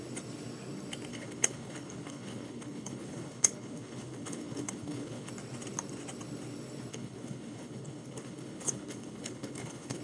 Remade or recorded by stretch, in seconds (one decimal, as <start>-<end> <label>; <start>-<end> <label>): 0.0-1.1 recorded; 1.1-5.3 remade; 5.3-6.9 recorded; 6.9-10.0 remade